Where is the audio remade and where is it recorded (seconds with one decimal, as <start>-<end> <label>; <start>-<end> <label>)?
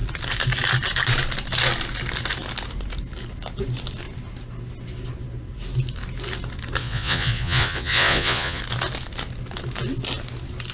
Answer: 0.0-6.8 recorded; 6.8-8.6 remade; 8.6-10.7 recorded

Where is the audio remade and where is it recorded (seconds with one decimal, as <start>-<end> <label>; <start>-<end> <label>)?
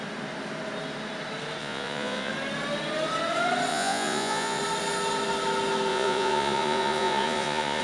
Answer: 0.0-1.6 recorded; 1.6-2.3 remade; 2.3-3.7 recorded; 3.7-4.6 remade; 4.6-5.9 recorded; 5.9-7.8 remade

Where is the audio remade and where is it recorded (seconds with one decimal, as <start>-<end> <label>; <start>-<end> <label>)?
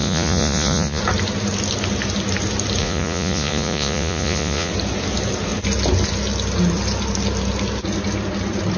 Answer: 0.0-1.0 remade; 1.0-2.8 recorded; 2.8-4.7 remade; 4.7-8.8 recorded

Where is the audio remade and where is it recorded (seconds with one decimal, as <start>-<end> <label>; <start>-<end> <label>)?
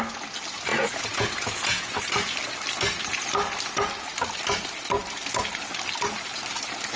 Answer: 0.0-0.7 recorded; 0.7-2.0 remade; 2.0-7.0 recorded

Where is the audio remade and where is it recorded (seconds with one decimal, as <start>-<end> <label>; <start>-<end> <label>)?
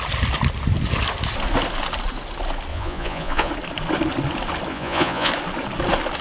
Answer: 0.0-2.7 recorded; 2.7-3.5 remade; 3.5-4.7 recorded; 4.7-5.3 remade; 5.3-6.2 recorded